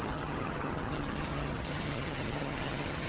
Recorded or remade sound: remade